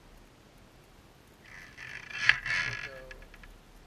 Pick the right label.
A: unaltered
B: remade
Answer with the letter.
A